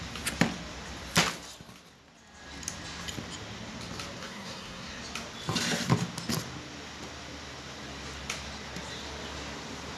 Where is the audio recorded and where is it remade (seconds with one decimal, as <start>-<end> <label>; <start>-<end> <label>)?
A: 0.0-4.2 recorded; 4.2-5.0 remade; 5.0-10.0 recorded